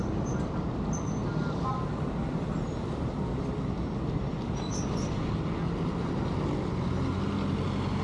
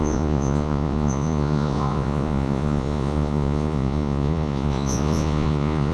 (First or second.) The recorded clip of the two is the first